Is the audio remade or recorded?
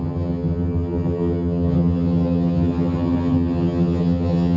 remade